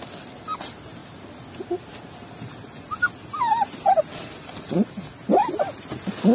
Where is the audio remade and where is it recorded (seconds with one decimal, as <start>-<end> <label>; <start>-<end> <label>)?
0.0-6.3 recorded